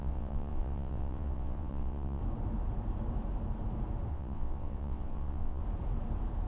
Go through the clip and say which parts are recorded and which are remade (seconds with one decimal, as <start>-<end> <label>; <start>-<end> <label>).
0.0-2.2 remade; 2.2-4.1 recorded; 4.1-5.6 remade; 5.6-6.5 recorded